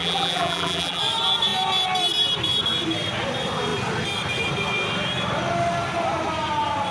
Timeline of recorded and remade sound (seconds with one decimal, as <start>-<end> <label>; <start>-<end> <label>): 0.0-1.0 remade; 1.0-6.9 recorded